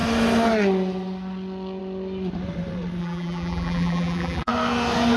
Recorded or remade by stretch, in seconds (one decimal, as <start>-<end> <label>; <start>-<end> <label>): 0.0-3.0 recorded; 3.0-4.5 remade; 4.5-5.2 recorded